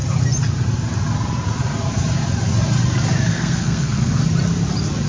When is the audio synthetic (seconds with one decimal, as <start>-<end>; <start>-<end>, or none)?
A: 3.3-4.2